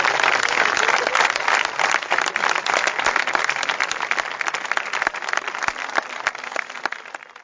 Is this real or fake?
real